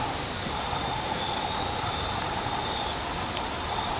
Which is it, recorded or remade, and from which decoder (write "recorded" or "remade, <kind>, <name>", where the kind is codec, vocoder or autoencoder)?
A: remade, vocoder, BigVGAN v2